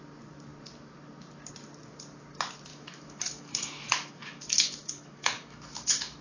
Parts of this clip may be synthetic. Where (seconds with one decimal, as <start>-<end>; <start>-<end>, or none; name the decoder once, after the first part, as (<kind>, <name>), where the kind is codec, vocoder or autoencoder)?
2.7-6.2 (autoencoder, DAC-VAE)